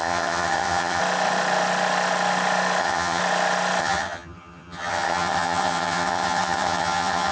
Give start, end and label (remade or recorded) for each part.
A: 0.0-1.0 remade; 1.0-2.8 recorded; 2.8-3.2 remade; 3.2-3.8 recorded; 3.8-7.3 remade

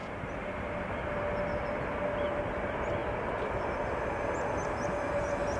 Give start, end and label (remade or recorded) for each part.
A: 0.0-0.8 remade; 0.8-5.6 recorded

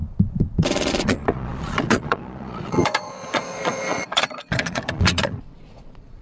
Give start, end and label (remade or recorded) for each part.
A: 0.0-6.2 remade

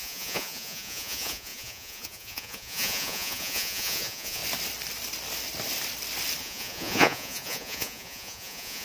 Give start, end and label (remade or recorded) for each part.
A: 0.0-4.4 remade; 4.4-6.4 recorded; 6.4-8.8 remade

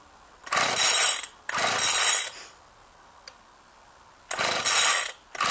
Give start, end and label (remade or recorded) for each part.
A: 0.0-5.5 recorded

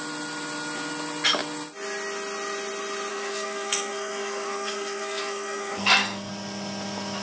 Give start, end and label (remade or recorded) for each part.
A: 0.0-3.1 recorded; 3.1-6.3 remade; 6.3-7.2 recorded